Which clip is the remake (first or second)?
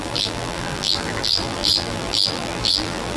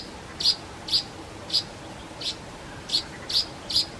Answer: first